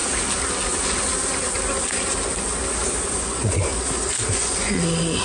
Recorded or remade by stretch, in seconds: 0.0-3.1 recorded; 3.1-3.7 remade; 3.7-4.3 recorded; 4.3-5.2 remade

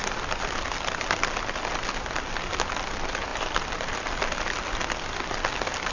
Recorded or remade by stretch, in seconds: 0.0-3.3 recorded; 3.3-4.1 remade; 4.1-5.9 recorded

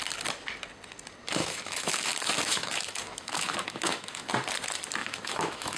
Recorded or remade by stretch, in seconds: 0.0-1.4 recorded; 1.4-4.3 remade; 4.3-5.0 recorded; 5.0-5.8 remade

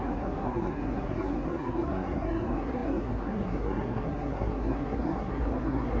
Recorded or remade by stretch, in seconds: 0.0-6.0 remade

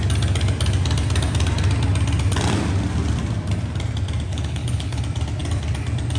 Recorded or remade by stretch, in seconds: 0.0-4.3 recorded; 4.3-5.0 remade; 5.0-6.2 recorded

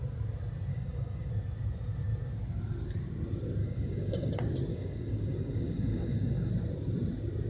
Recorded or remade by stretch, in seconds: 0.0-0.7 recorded; 0.7-1.3 remade; 1.3-3.6 recorded; 3.6-4.3 remade; 4.3-4.7 recorded; 4.7-6.5 remade; 6.5-7.5 recorded